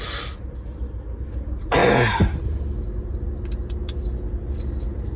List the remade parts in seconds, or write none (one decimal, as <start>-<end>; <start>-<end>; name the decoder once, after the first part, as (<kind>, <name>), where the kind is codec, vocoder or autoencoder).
none